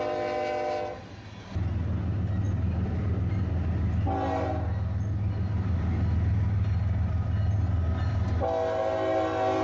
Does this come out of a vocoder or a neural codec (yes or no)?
no